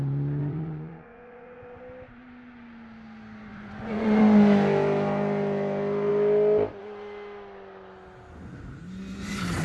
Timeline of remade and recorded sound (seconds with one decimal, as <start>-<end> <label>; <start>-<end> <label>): 0.0-0.4 recorded; 0.4-1.8 remade; 1.8-3.5 recorded; 3.5-4.2 remade; 4.2-9.6 recorded

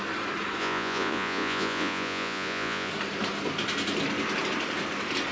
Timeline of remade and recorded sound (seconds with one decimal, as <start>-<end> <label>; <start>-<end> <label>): 0.0-0.6 recorded; 0.6-2.9 remade; 2.9-5.3 recorded

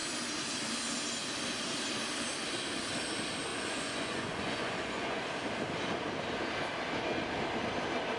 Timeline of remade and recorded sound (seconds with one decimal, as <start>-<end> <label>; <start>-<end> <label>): 0.0-3.5 recorded; 3.5-5.2 remade; 5.2-8.2 recorded

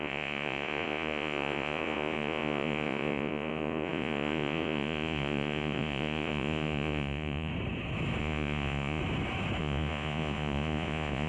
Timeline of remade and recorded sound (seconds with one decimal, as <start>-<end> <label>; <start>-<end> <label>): 0.0-7.5 remade; 7.5-8.2 recorded; 8.2-9.0 remade; 9.0-9.6 recorded; 9.6-11.3 remade

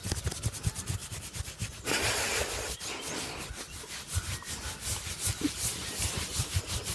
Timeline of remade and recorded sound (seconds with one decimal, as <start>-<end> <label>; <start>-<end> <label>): 0.0-6.9 recorded

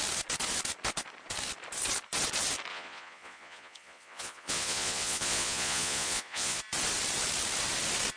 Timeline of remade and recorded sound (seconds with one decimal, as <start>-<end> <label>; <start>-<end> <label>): 0.0-2.7 recorded; 2.7-6.6 remade; 6.6-8.2 recorded

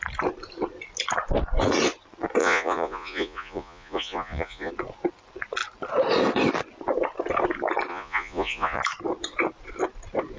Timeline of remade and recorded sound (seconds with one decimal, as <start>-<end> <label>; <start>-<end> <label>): 0.0-2.4 recorded; 2.4-4.7 remade; 4.7-7.9 recorded; 7.9-8.8 remade; 8.8-10.4 recorded

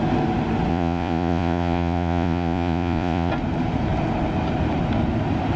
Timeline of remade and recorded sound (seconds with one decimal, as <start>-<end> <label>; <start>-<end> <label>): 0.0-0.7 recorded; 0.7-3.3 remade; 3.3-5.6 recorded